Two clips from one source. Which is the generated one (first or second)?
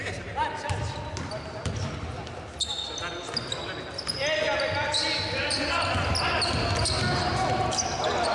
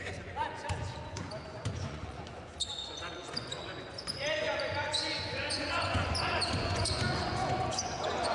second